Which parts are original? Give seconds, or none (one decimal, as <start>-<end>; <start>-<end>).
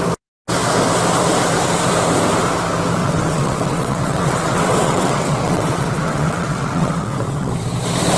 0.0-3.0; 7.5-8.2